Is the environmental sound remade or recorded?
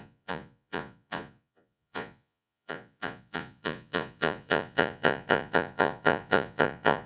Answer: remade